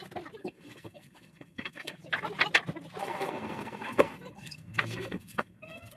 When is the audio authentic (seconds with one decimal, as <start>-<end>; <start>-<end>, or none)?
0.0-0.4; 2.0-3.0